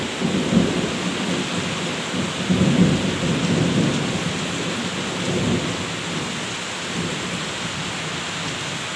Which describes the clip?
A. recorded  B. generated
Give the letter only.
A